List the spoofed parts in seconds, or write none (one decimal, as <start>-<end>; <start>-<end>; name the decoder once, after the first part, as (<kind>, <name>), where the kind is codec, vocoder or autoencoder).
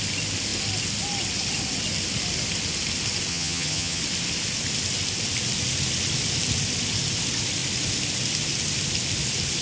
3.3-4.0 (vocoder, HiFi-GAN)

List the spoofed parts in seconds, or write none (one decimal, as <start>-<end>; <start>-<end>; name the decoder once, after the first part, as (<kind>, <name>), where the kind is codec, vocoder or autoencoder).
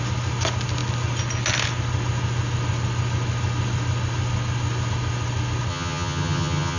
5.7-6.8 (vocoder, HiFi-GAN)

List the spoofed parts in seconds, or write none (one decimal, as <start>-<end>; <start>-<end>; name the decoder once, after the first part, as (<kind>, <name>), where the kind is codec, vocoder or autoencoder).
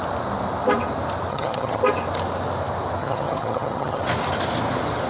1.3-1.8 (vocoder, HiFi-GAN); 3.0-4.0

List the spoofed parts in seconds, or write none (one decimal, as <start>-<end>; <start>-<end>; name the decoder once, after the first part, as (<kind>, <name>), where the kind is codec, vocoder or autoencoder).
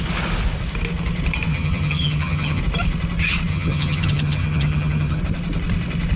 1.5-2.6 (vocoder, HiFi-GAN); 3.5-5.2